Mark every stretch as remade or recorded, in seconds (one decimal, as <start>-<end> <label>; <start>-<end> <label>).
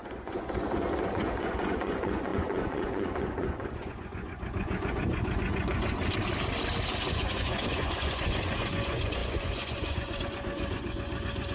0.0-6.0 remade; 6.0-7.1 recorded; 7.1-11.5 remade